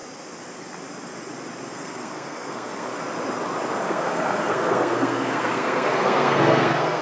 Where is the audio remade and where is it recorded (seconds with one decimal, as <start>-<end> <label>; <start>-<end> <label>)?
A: 0.0-1.7 recorded; 1.7-2.9 remade; 2.9-3.8 recorded; 3.8-7.0 remade